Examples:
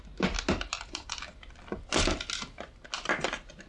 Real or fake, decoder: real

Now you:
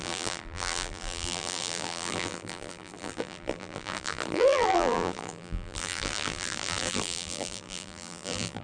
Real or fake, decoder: fake, vocoder, BigVGAN v2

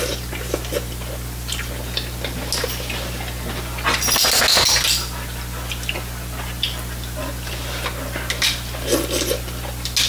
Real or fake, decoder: real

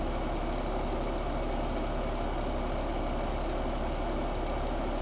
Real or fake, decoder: real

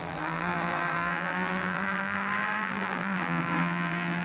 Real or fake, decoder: fake, vocoder, BigVGAN v2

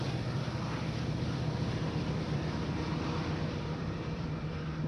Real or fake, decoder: fake, vocoder, BigVGAN v2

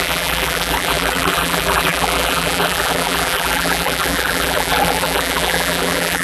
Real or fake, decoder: fake, vocoder, BigVGAN v2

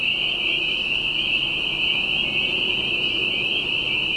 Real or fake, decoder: real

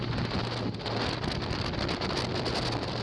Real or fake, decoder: real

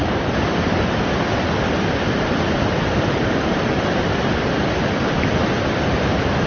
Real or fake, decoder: fake, vocoder, BigVGAN v2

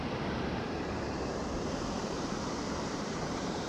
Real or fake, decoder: fake, vocoder, BigVGAN v2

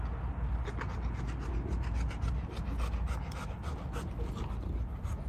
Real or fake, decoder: real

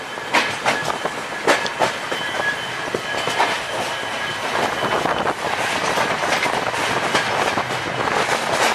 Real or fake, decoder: real